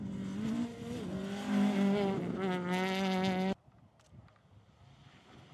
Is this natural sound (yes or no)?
yes